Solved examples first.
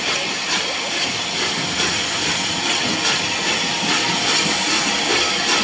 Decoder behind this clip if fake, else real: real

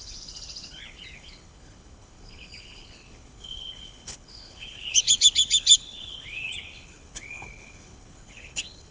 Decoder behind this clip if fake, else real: fake, codec, HILCodec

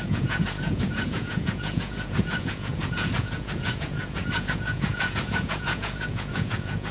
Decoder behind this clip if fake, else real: fake, vocoder, Vocos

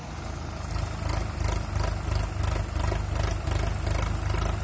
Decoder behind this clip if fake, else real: real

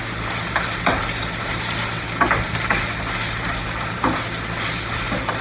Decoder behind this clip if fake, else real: real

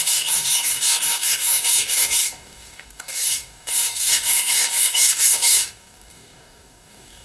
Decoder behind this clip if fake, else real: fake, codec, DAC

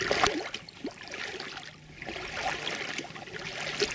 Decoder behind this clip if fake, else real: real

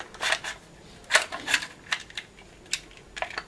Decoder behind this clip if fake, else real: real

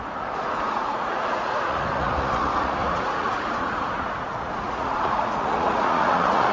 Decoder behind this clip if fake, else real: fake, vocoder, Vocos